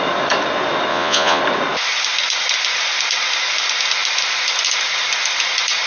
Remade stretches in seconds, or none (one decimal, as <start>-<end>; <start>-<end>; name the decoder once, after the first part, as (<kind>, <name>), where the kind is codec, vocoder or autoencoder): 0.9-1.4 (vocoder, Vocos)